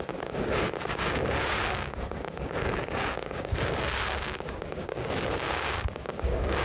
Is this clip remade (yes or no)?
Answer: yes